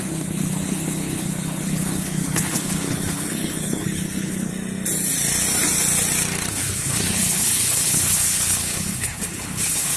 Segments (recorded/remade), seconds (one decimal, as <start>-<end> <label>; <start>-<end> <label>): 0.0-4.5 remade; 4.5-6.5 recorded; 6.5-10.0 remade